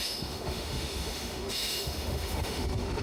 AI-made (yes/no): yes